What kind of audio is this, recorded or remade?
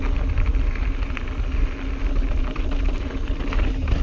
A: recorded